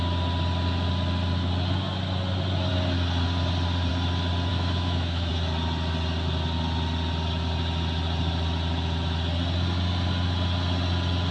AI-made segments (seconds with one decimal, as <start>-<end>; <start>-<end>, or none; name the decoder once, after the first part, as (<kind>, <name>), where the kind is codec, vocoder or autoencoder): 4.5-5.3 (autoencoder, DAC-VAE)